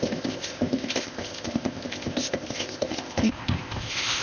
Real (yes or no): no